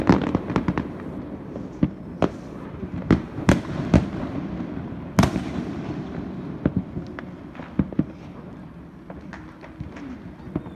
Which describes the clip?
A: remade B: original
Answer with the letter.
B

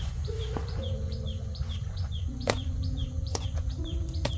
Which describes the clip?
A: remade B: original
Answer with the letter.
A